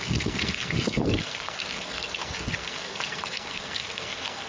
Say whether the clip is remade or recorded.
remade